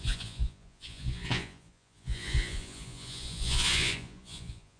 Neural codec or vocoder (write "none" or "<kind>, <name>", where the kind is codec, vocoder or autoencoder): vocoder, Vocos